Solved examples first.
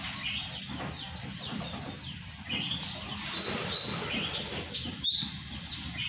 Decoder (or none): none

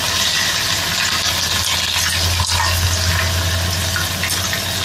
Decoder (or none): none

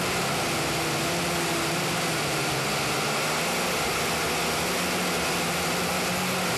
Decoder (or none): none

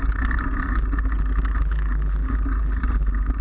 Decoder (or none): none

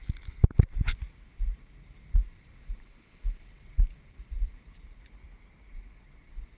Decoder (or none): none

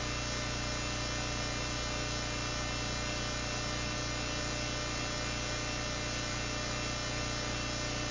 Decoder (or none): none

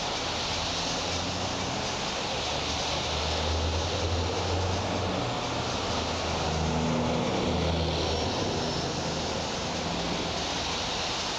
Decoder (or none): none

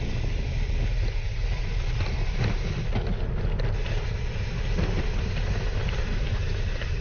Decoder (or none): none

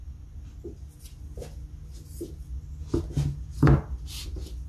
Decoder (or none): none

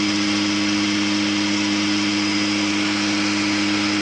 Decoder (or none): none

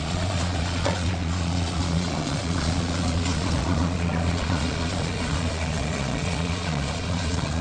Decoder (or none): vocoder, Vocos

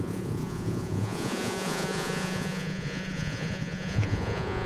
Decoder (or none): vocoder, Vocos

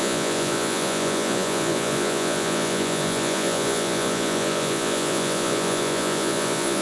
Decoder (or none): vocoder, Vocos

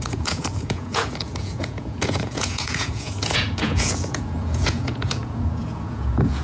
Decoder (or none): vocoder, Vocos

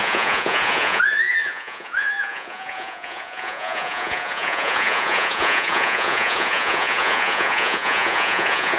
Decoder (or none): vocoder, Vocos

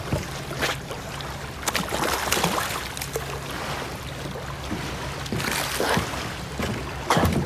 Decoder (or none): none